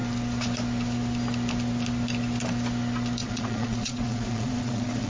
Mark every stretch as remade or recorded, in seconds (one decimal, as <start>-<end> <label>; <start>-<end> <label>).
0.0-3.2 recorded; 3.2-5.1 remade